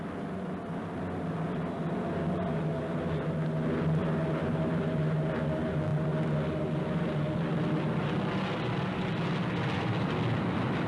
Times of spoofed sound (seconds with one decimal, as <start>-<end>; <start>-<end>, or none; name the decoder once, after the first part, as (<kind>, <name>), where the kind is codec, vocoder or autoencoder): 4.4-5.3 (vocoder, BigVGAN v2)